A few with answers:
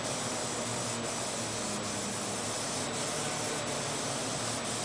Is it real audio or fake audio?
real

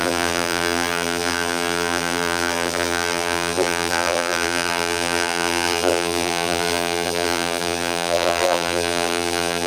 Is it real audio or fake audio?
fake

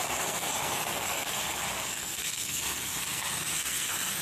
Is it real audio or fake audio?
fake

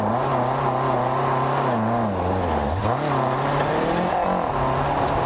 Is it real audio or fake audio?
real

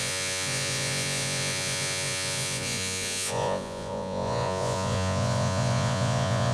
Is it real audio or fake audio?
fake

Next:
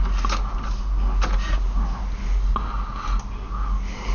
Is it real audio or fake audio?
real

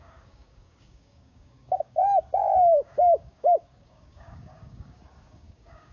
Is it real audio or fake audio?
fake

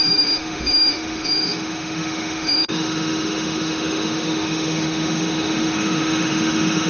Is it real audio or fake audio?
fake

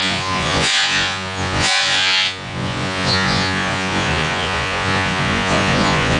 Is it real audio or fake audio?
fake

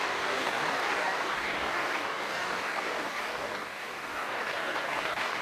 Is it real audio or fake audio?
fake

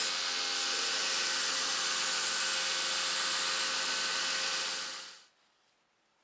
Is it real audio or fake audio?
real